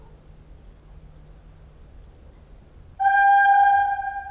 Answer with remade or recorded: recorded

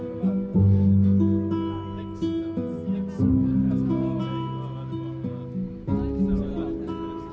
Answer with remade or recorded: recorded